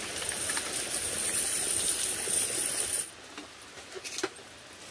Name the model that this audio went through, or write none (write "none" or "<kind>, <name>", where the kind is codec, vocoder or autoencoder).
none